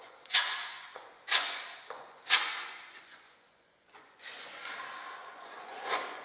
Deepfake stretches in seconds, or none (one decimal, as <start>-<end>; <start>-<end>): 0.0-6.2